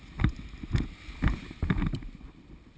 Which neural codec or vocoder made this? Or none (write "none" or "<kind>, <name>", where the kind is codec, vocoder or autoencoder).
none